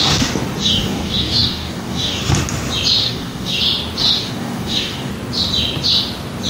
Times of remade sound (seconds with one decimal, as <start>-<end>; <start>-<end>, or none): 0.6-2.2; 3.0-3.6; 4.0-5.1